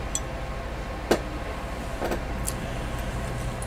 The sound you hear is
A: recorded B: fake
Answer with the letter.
A